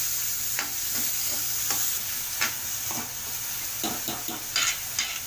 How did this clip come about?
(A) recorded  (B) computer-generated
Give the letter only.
A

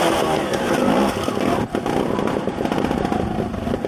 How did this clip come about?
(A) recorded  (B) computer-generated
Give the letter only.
A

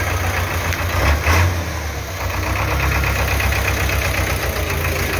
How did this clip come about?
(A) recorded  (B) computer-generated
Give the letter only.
A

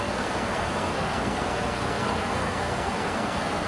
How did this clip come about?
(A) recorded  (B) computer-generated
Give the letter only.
B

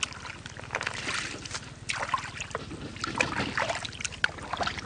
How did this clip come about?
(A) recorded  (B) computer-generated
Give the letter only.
A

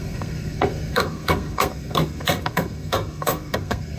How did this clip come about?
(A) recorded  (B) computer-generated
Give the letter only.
B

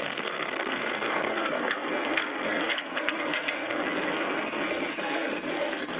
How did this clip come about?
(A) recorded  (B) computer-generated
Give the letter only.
B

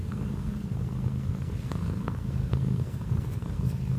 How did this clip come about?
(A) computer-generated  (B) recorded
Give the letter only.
A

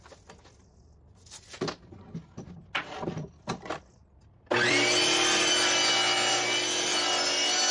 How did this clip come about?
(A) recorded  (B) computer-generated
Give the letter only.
A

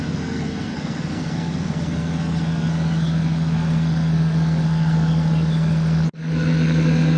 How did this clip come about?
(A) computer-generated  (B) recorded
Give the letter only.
A